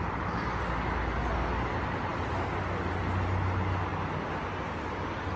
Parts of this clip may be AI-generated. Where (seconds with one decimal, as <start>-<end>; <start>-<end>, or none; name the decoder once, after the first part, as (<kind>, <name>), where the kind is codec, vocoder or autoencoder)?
none